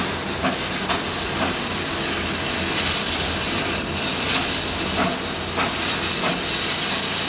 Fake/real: real